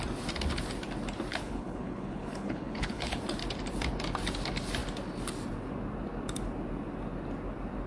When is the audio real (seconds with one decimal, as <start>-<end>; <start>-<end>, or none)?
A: 0.0-1.3; 3.2-7.9